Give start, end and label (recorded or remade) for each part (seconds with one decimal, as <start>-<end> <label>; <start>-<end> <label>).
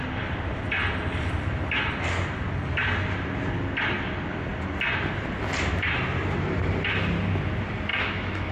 0.0-7.9 recorded; 7.9-8.5 remade